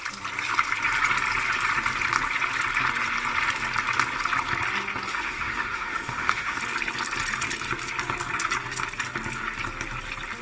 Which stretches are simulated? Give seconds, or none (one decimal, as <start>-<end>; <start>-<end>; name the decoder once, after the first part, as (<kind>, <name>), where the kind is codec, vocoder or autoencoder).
5.1-6.6 (autoencoder, DAC-VAE)